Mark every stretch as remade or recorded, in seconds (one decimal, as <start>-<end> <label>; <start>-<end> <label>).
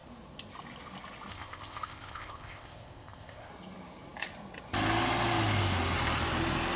0.0-1.3 recorded; 1.3-3.5 remade; 3.5-6.8 recorded